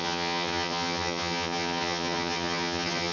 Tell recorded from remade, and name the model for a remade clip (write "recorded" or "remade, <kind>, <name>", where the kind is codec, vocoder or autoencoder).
remade, vocoder, HiFi-GAN